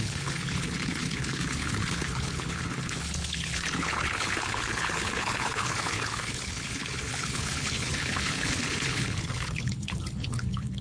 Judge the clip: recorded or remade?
remade